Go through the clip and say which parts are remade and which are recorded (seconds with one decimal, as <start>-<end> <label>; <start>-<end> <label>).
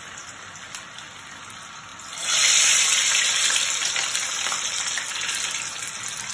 0.0-6.3 recorded